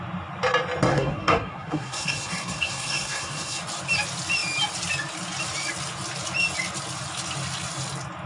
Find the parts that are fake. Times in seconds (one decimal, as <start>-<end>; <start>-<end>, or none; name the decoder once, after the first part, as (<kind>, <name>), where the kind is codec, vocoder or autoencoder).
0.9-3.6 (codec, SNAC)